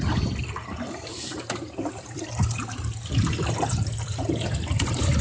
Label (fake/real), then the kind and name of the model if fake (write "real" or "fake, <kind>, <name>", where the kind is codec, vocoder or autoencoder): fake, vocoder, BigVGAN v2